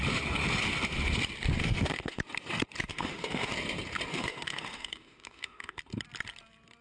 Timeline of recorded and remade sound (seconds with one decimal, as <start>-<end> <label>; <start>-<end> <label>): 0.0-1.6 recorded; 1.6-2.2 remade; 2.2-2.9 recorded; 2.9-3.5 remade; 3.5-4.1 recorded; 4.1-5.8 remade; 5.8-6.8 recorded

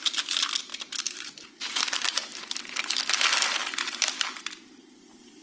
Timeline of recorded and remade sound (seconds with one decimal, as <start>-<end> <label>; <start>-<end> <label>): 0.0-0.7 recorded; 0.7-1.5 remade; 1.5-5.4 recorded

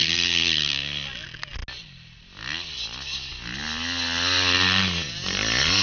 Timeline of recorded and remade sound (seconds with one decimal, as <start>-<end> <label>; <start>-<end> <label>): 0.0-0.7 remade; 0.7-5.8 recorded

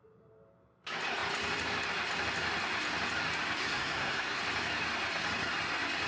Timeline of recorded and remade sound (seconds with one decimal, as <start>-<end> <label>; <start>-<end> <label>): 0.0-3.6 recorded; 3.6-4.4 remade; 4.4-6.1 recorded

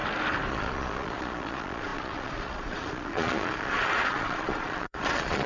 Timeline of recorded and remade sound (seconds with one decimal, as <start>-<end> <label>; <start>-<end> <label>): 0.0-0.5 recorded; 0.5-5.5 remade

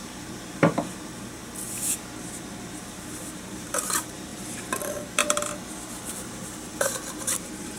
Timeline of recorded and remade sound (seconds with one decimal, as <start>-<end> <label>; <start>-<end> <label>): 0.0-1.4 remade; 1.4-2.2 recorded; 2.2-5.2 remade; 5.2-7.3 recorded; 7.3-7.8 remade